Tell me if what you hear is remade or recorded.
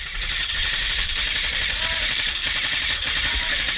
remade